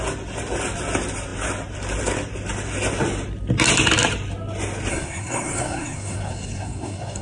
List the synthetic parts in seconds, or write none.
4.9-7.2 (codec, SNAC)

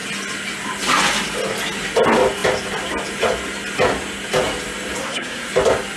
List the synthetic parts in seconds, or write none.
5.0-5.5 (codec, SNAC)

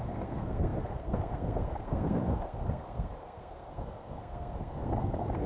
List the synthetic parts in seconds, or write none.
0.0-5.5 (codec, SNAC)

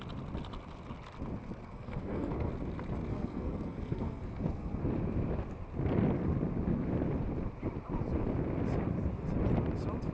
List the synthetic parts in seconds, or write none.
1.6-2.5 (codec, SNAC); 3.1-4.8

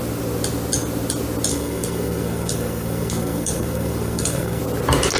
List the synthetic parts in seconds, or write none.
1.5-4.6 (codec, SNAC)

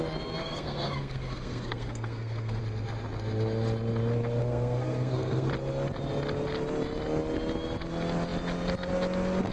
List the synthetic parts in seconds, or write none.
0.4-2.6 (codec, SNAC); 4.4-5.5

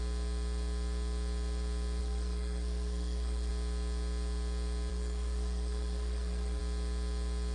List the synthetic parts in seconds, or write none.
2.0-3.5 (codec, SNAC); 4.9-6.6

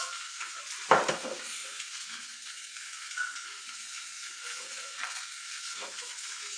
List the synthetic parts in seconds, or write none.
0.0-0.6 (codec, SNAC); 1.1-6.6